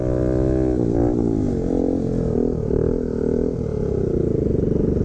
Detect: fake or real real